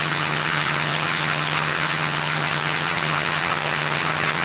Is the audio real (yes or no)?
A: no